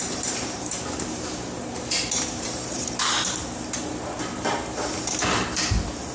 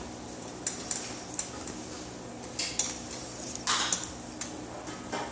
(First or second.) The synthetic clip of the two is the first